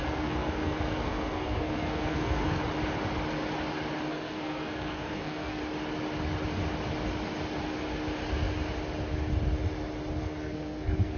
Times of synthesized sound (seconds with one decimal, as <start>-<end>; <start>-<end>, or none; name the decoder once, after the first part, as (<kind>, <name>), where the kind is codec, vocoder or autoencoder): 0.0-2.6 (codec, SNAC); 4.1-5.6; 10.2-11.2